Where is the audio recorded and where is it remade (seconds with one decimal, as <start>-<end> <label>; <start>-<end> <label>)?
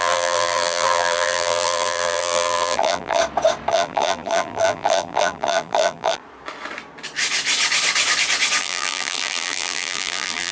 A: 0.0-3.2 remade; 3.2-3.7 recorded; 3.7-6.2 remade; 6.2-8.6 recorded; 8.6-10.5 remade